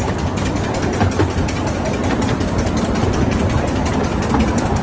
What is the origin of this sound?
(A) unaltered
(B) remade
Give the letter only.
A